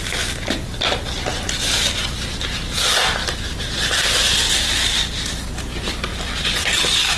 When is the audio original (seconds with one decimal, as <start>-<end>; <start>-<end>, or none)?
0.0-3.2; 5.3-6.1